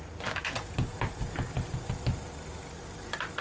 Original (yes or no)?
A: yes